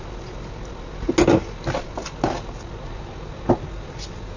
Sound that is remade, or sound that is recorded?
recorded